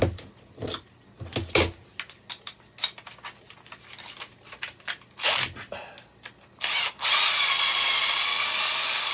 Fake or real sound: real